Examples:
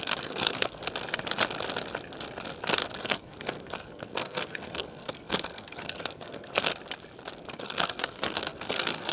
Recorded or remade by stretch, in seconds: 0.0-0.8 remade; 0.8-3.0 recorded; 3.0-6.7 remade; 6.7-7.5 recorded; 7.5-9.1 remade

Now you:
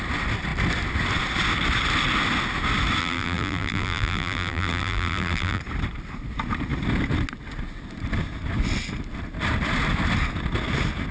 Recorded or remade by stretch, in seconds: 0.0-3.0 recorded; 3.0-5.6 remade; 5.6-11.1 recorded

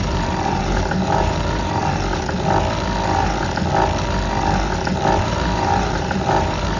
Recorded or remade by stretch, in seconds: 0.0-1.8 remade; 1.8-5.2 recorded; 5.2-6.8 remade